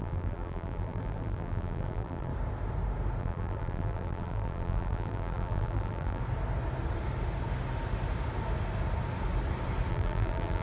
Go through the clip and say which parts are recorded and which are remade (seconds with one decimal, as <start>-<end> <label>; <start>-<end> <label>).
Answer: 0.0-2.3 remade; 2.3-3.2 recorded; 3.2-6.2 remade; 6.2-9.9 recorded; 9.9-10.6 remade